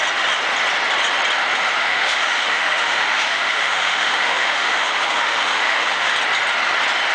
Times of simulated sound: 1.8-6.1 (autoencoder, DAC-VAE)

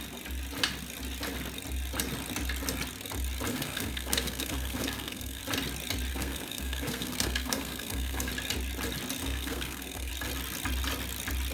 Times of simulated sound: 3.5-5.4 (codec, SNAC); 6.1-8.3; 9.2-10.1

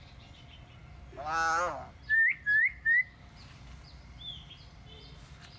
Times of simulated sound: none

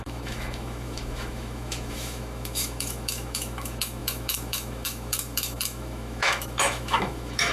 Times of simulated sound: 0.0-7.5 (autoencoder, DAC-VAE)

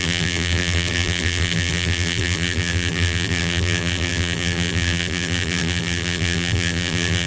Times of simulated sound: 0.0-7.3 (vocoder, BigVGAN v2)